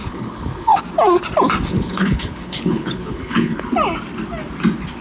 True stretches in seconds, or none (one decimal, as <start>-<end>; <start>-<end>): 0.8-1.7; 3.7-5.0